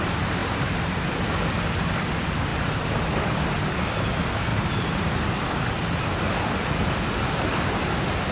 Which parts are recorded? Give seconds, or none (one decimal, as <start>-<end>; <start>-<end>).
0.0-0.4; 1.5-2.5; 3.0-4.5; 5.6-8.3